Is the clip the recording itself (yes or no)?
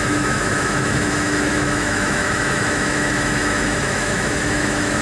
no